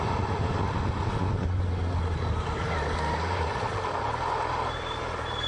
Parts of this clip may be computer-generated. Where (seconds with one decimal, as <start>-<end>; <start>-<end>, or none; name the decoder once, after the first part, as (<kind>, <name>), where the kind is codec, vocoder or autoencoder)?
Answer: none